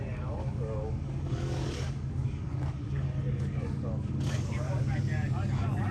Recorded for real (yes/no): no